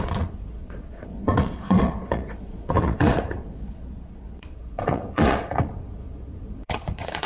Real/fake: fake